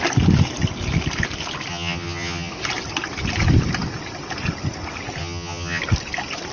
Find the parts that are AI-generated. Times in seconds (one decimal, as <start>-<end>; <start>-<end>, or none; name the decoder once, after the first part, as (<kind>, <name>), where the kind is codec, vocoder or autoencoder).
1.7-2.5 (vocoder, HiFi-GAN); 5.2-5.8